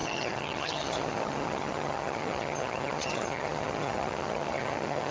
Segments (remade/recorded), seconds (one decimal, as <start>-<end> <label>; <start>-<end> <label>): 0.0-5.1 remade